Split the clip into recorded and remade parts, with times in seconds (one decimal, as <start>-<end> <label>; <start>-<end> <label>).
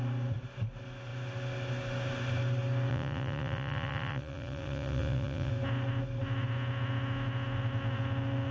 0.0-2.9 recorded; 2.9-5.5 remade; 5.5-8.5 recorded